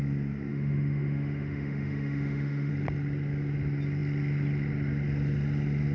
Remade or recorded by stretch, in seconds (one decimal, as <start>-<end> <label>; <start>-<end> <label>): 0.0-0.5 recorded; 0.5-2.7 remade; 2.7-5.9 recorded